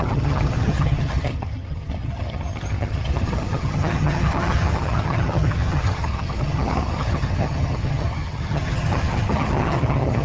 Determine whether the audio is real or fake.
fake